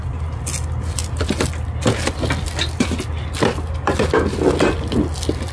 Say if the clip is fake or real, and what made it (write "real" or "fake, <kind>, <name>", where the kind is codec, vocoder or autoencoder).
real